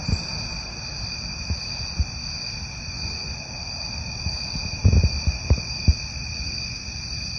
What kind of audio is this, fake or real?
real